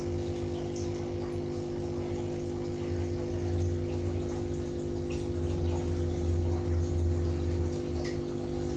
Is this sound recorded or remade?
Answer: recorded